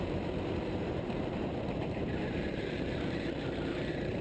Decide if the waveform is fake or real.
fake